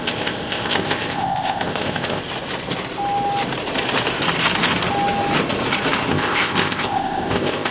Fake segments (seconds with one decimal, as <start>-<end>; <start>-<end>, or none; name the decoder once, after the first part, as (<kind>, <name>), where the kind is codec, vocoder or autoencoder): 0.0-2.2 (codec, ZipCodec); 6.1-7.7